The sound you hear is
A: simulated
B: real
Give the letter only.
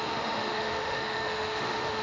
A